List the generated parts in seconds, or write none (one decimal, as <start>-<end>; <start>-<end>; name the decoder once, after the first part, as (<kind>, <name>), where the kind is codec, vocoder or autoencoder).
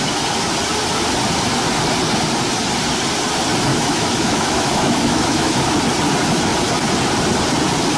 3.7-5.6 (autoencoder, DAC-VAE)